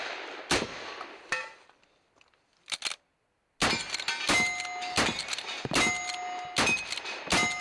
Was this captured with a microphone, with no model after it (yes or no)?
yes